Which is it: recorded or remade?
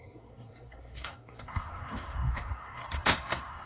remade